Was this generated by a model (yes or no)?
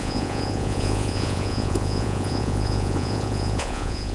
yes